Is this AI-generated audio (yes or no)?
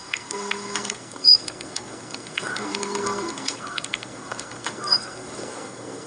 yes